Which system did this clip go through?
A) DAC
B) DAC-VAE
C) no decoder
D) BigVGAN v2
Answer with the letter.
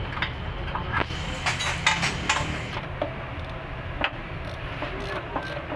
C